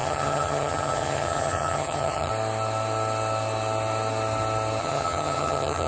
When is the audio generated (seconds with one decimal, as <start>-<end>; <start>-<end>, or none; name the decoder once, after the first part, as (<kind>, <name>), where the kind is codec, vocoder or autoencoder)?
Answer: 0.0-2.3 (vocoder, HiFi-GAN); 4.8-5.9